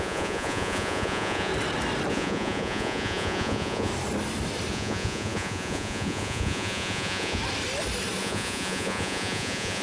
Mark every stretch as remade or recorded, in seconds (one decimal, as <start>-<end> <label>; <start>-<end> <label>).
0.0-1.5 remade; 1.5-2.1 recorded; 2.1-3.9 remade; 3.9-4.7 recorded; 4.7-7.4 remade; 7.4-8.2 recorded; 8.2-9.8 remade

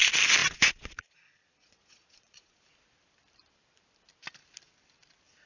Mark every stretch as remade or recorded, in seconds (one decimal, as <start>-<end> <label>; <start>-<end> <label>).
0.0-0.4 recorded; 0.4-2.6 remade; 2.6-5.5 recorded

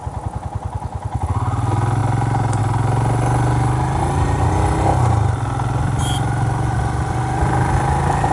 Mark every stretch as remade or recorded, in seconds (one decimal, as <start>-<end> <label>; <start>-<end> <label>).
0.0-8.3 recorded

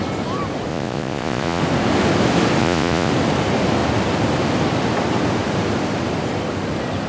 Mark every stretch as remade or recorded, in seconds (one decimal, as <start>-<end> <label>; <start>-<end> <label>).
0.0-0.7 recorded; 0.7-1.6 remade; 1.6-2.6 recorded; 2.6-3.1 remade; 3.1-7.1 recorded

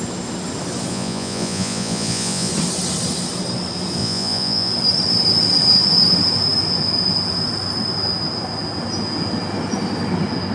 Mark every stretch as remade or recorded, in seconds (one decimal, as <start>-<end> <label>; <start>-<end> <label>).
0.0-0.9 recorded; 0.9-2.5 remade; 2.5-4.0 recorded; 4.0-4.7 remade; 4.7-10.5 recorded

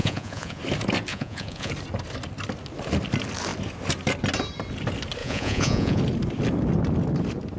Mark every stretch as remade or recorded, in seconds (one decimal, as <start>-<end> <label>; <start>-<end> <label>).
0.0-0.6 remade; 0.6-1.1 recorded; 1.1-1.7 remade; 1.7-5.2 recorded; 5.2-6.0 remade; 6.0-7.6 recorded

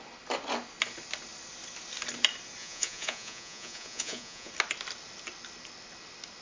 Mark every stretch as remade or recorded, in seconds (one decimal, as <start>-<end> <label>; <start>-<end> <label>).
0.0-2.6 recorded; 2.6-4.5 remade; 4.5-6.4 recorded